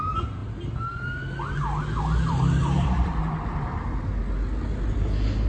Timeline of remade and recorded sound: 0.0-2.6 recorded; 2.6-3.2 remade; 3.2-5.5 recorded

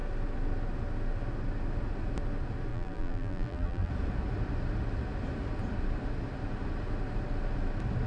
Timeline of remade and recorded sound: 0.0-2.7 recorded; 2.7-3.9 remade; 3.9-8.1 recorded

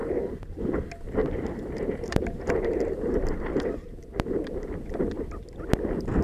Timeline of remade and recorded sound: 0.0-0.6 remade; 0.6-1.2 recorded; 1.2-4.8 remade; 4.8-6.2 recorded